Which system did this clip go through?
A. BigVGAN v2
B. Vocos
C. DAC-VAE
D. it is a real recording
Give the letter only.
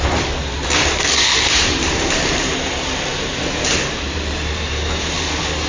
A